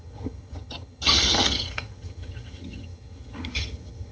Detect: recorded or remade remade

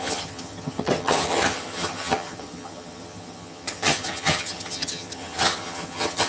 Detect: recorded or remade remade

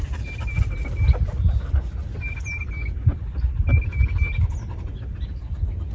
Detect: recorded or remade recorded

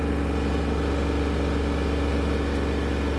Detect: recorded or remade recorded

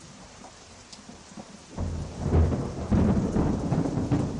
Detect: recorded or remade remade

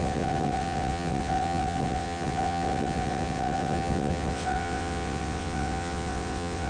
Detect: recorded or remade remade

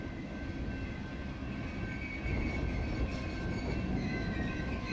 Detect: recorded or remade recorded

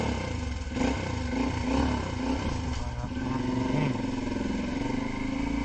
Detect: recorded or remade recorded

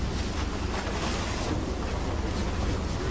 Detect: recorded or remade recorded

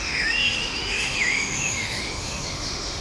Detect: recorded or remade remade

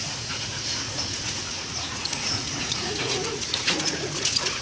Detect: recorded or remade remade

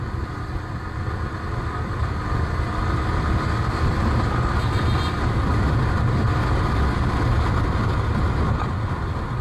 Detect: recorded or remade recorded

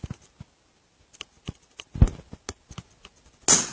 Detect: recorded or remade recorded